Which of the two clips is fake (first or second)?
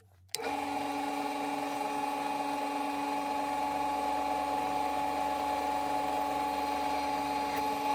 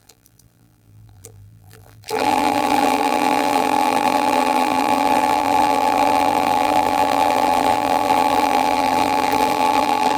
second